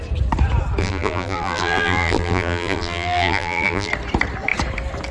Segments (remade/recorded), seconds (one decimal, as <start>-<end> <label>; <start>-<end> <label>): 0.0-0.8 recorded; 0.8-3.9 remade; 3.9-5.1 recorded